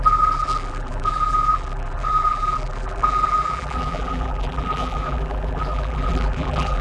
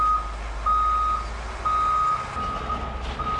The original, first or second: second